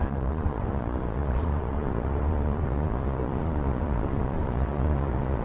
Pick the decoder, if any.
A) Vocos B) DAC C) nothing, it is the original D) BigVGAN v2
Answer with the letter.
A